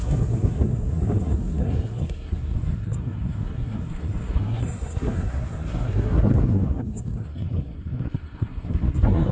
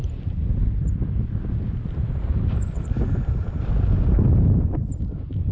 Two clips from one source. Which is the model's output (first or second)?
first